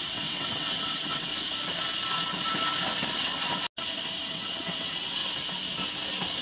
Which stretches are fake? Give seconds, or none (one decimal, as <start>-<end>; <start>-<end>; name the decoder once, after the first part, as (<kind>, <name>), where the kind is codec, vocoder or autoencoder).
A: 0.0-1.3 (vocoder, WaveNeXt); 4.3-5.2